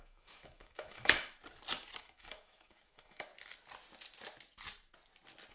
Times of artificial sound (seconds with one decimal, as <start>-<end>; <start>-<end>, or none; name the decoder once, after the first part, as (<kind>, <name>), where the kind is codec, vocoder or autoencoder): 0.0-1.4 (autoencoder, DAC-VAE); 2.0-3.3